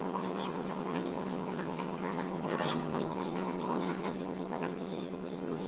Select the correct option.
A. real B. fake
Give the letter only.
B